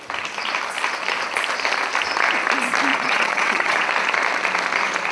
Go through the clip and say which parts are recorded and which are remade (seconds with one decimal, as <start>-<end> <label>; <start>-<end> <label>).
0.0-2.9 recorded; 2.9-3.9 remade; 3.9-5.1 recorded